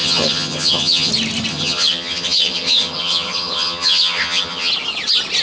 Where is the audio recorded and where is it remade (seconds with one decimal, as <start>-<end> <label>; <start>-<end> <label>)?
0.0-1.1 remade; 1.1-1.5 recorded; 1.5-4.7 remade; 4.7-5.4 recorded